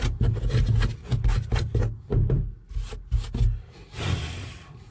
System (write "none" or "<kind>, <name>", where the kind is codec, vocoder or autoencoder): none